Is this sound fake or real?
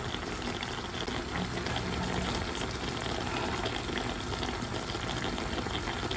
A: real